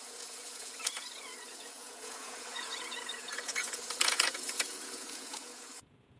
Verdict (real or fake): fake